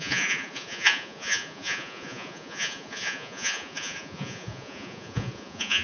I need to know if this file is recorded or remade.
remade